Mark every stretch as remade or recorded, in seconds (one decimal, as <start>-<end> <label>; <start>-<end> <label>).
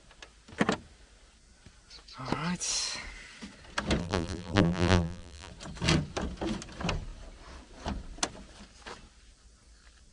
0.0-4.0 recorded; 4.0-5.5 remade; 5.5-10.1 recorded